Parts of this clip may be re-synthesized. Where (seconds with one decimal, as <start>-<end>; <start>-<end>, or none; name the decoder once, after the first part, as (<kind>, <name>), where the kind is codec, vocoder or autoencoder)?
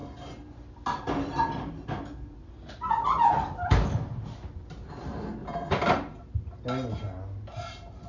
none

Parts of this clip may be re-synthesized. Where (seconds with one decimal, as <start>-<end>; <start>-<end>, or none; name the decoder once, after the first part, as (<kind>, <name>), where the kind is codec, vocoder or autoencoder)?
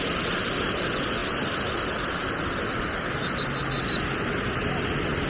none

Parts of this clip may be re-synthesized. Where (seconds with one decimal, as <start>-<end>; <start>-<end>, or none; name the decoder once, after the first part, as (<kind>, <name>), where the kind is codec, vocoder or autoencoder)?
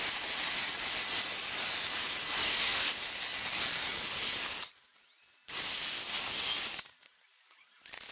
2.4-2.9 (codec, SNAC)